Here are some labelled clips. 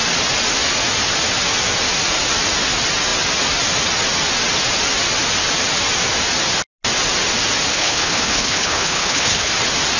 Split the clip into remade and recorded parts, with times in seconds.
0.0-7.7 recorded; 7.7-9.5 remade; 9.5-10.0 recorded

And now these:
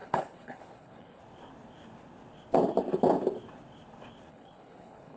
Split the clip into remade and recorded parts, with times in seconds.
0.0-1.2 remade; 1.2-4.3 recorded; 4.3-5.2 remade

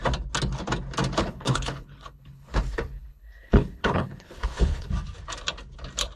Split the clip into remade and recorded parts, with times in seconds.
0.0-1.2 recorded; 1.2-4.9 remade; 4.9-6.2 recorded

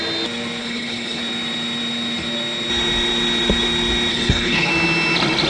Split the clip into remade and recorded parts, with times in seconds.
0.0-0.6 recorded; 0.6-1.2 remade; 1.2-4.1 recorded; 4.1-4.7 remade; 4.7-5.5 recorded

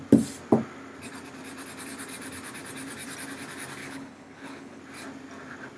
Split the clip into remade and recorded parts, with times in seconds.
0.0-3.8 recorded; 3.8-4.8 remade; 4.8-5.8 recorded

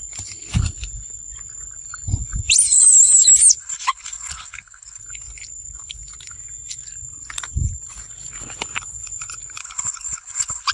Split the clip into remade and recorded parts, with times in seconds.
0.0-3.6 recorded; 3.6-5.0 remade; 5.0-9.6 recorded; 9.6-10.7 remade

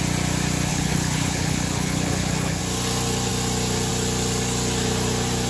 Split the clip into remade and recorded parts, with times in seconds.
0.0-0.7 recorded; 0.7-2.6 remade; 2.6-5.5 recorded